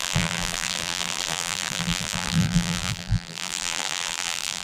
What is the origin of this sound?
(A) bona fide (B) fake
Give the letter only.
B